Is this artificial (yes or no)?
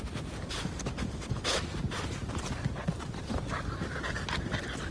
no